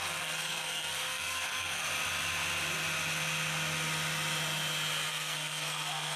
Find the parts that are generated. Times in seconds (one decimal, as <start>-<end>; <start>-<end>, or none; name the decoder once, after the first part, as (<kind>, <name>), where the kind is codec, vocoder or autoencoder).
0.0-1.9 (codec, SNAC); 5.1-6.2